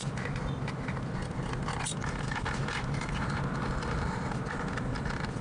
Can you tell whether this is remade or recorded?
recorded